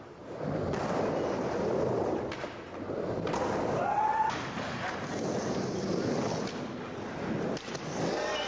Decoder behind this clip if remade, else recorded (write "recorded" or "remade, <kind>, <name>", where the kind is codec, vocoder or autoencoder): recorded